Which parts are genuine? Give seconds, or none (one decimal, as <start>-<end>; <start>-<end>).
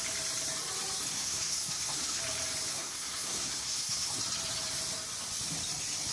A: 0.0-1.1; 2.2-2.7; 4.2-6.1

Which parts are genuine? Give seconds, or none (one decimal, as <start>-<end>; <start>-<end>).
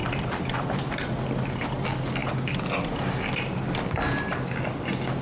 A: 0.8-5.2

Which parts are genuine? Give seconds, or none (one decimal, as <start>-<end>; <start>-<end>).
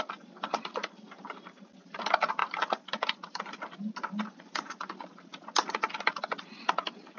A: 0.0-7.2